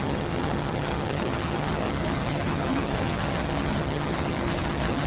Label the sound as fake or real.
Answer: fake